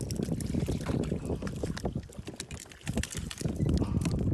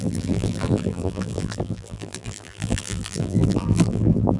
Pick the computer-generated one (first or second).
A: second